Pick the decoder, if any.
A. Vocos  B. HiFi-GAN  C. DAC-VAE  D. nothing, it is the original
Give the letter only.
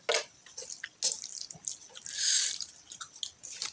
D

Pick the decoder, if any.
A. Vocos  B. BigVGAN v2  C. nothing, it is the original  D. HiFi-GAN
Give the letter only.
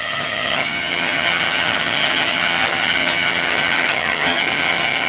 D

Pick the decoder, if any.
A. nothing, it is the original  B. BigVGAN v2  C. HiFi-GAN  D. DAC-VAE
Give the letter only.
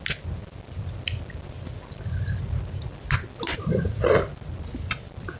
A